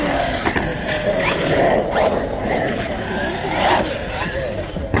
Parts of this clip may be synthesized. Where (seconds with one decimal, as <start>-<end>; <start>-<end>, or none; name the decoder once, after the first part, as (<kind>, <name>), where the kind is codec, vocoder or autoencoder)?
none